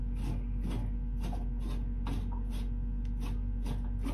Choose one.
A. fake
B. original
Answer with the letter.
B